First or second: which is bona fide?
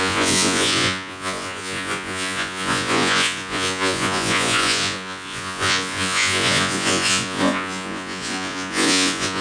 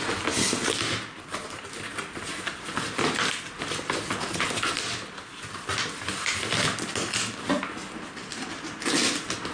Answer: second